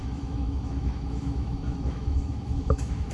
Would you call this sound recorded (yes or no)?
no